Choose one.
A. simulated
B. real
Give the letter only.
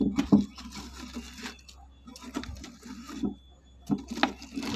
B